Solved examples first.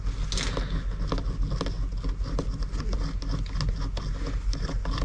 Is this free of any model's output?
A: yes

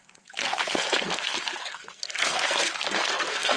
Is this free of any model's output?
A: no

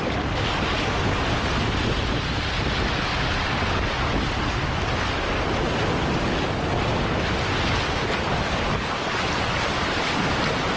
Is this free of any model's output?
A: yes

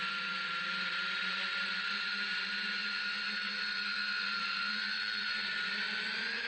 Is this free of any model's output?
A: no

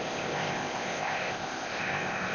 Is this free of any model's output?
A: no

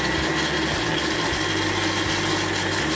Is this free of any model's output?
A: yes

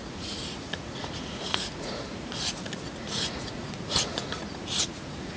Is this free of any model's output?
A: no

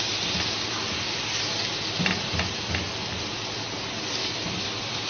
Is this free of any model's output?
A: yes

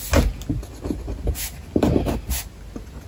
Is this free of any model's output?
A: yes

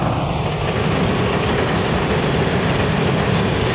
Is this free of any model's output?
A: yes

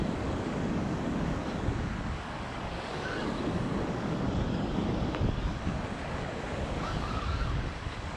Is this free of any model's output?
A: no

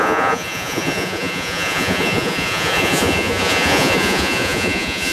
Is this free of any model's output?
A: no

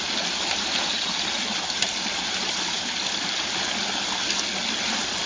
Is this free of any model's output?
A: yes